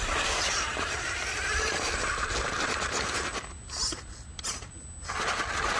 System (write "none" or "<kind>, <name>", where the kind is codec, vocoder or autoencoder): none